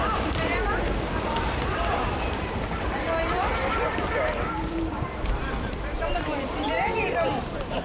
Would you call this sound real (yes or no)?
no